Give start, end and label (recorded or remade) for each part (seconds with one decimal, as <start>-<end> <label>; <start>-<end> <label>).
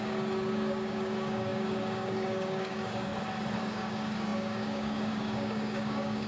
0.0-3.1 remade; 3.1-3.6 recorded; 3.6-6.3 remade